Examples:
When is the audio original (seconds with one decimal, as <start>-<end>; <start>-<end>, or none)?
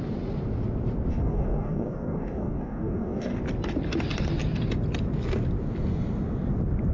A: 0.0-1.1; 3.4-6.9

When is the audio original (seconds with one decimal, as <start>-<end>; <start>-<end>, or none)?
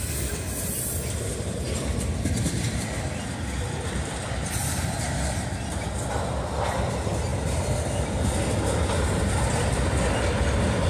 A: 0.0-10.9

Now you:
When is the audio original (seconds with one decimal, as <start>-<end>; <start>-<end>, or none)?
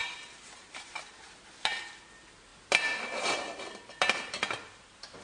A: 1.3-5.2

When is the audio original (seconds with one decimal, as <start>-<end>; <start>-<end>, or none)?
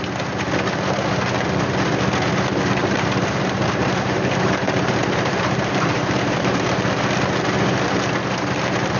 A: 0.0-2.8; 6.7-9.0